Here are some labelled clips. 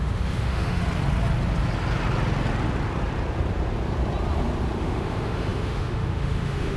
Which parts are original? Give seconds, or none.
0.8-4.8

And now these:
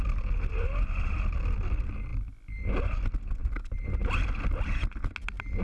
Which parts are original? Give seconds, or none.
0.0-5.6

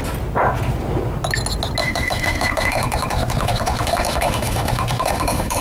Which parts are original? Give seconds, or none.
0.0-1.8